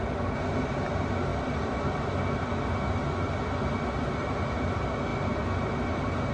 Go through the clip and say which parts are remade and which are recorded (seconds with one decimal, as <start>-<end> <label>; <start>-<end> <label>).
0.0-6.3 recorded